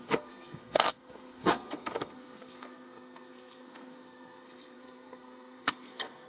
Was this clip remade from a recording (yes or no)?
yes